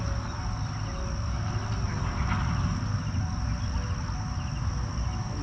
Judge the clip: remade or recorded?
recorded